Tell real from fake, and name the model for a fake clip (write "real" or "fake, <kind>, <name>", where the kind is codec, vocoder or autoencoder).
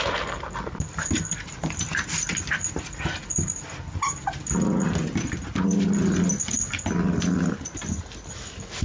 real